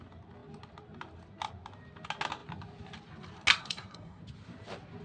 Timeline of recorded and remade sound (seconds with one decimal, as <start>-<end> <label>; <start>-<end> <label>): 0.0-3.6 recorded; 3.6-4.2 remade; 4.2-5.0 recorded